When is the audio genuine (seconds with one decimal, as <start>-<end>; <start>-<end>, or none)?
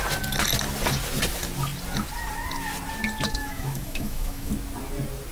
0.0-3.4; 4.5-5.3